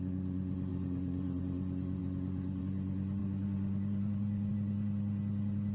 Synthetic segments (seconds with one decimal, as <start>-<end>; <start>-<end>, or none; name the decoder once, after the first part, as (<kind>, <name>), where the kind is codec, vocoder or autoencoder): 0.7-1.4 (vocoder, BigVGAN v2); 3.2-4.5